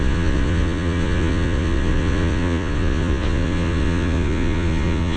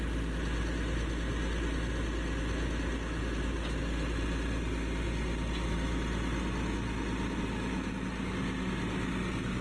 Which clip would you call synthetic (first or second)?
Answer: first